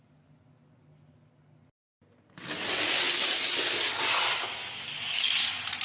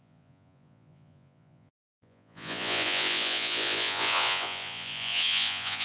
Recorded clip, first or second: first